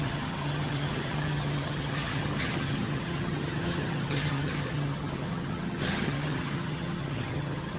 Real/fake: fake